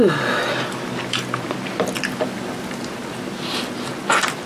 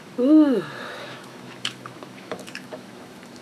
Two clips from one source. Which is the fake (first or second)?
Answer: second